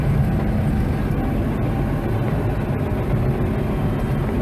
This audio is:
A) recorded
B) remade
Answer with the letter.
A